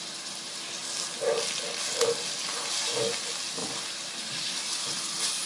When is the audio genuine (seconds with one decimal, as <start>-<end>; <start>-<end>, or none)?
0.0-3.6; 4.8-5.5